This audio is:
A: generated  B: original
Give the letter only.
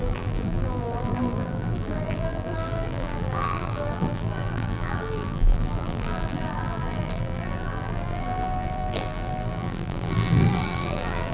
A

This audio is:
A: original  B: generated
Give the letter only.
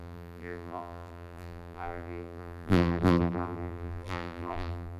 B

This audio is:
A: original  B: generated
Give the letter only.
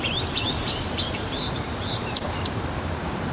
B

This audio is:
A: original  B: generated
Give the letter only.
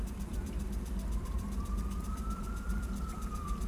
B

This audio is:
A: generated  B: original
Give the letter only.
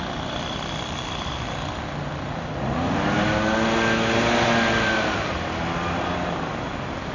B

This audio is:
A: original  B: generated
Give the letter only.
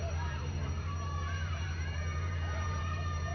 B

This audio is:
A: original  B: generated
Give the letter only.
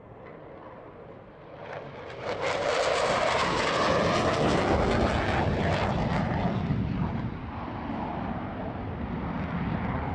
A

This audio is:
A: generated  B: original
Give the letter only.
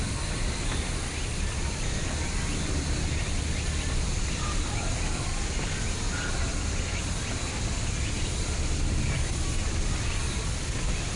B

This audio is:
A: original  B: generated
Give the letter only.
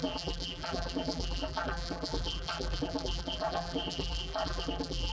B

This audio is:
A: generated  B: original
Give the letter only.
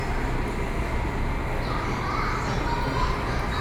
B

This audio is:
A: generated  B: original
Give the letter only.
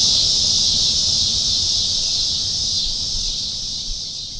A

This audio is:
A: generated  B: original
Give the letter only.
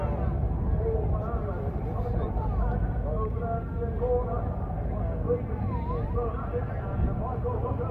B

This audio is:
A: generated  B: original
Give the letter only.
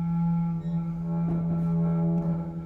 B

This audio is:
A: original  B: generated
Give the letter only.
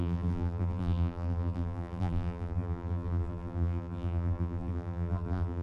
B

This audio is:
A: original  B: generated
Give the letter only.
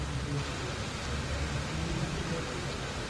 A